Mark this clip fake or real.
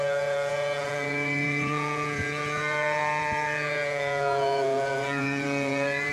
fake